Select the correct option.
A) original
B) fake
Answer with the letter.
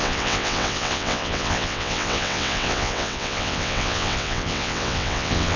B